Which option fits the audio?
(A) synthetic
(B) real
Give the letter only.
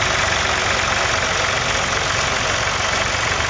B